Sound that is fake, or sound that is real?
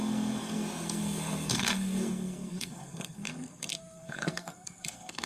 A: fake